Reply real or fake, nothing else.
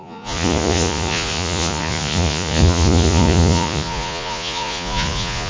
fake